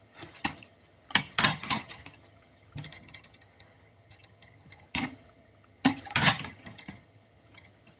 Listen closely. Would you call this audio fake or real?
fake